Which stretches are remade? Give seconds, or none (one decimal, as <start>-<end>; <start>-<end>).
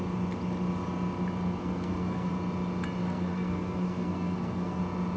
1.6-2.3; 3.0-4.8